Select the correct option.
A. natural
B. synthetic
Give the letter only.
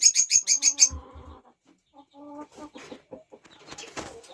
A